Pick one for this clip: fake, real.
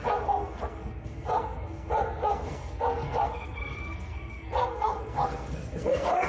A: fake